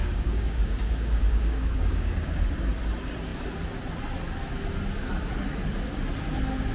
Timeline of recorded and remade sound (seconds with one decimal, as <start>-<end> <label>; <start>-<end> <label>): 0.0-2.4 remade; 2.4-6.7 recorded